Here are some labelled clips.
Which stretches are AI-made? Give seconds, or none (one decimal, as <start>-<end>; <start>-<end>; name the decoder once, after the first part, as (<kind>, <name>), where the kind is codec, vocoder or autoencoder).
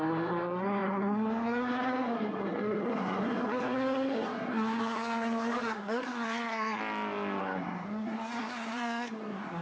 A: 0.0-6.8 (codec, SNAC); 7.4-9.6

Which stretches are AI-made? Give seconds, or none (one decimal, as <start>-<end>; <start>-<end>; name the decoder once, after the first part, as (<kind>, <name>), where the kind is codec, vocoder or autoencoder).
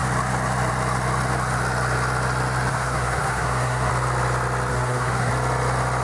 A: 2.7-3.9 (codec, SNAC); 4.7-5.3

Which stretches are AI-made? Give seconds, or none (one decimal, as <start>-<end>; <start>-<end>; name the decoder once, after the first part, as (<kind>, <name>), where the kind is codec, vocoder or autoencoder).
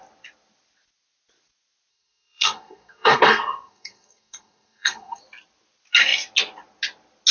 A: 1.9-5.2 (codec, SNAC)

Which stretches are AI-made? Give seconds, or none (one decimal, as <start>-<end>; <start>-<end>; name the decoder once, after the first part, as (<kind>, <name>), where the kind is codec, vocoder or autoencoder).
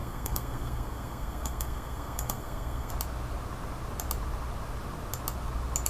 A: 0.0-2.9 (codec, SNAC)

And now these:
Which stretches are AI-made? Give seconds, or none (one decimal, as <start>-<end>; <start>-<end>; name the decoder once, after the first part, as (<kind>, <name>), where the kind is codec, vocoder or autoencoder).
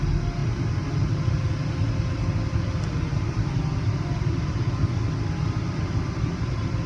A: none